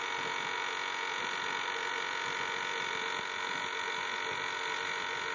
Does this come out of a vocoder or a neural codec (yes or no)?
no